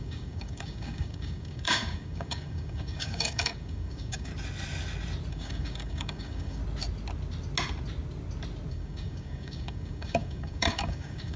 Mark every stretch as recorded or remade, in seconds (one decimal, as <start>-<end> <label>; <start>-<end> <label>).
0.0-4.3 remade; 4.3-5.3 recorded; 5.3-6.6 remade; 6.6-8.7 recorded; 8.7-11.4 remade